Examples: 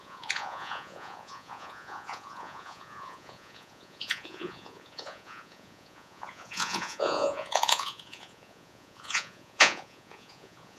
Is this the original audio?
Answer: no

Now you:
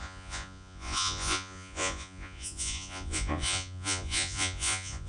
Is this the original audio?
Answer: no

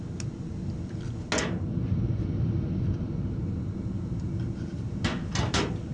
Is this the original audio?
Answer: yes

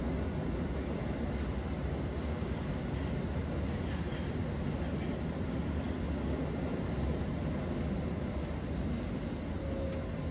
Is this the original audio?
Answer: yes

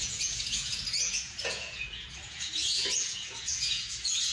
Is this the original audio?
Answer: no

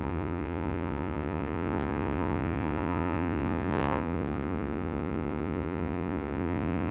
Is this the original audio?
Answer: no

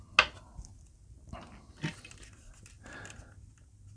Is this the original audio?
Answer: yes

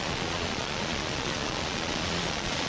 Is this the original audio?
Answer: no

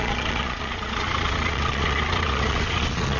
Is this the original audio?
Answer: no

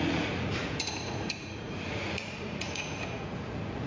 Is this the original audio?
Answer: no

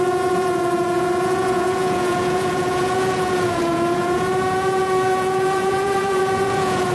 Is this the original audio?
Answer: no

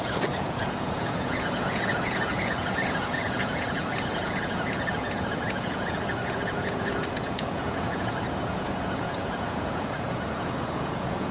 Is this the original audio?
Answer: no